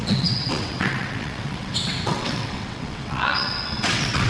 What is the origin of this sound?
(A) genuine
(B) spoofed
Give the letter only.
B